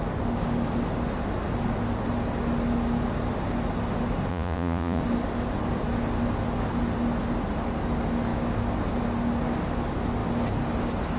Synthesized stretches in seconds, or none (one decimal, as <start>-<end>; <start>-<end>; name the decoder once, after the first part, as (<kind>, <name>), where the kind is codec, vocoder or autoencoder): 4.3-5.0 (vocoder, Vocos)